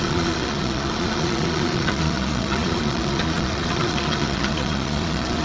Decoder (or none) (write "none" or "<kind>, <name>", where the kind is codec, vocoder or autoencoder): vocoder, Vocos